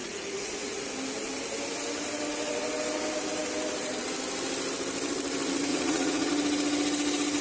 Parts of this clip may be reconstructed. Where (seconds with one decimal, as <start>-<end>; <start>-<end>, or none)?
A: 0.0-0.9; 5.7-6.3